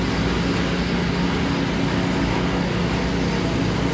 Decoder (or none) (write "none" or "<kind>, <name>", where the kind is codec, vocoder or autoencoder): none